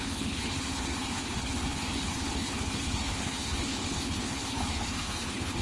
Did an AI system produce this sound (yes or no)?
yes